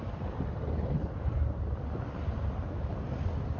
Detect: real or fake real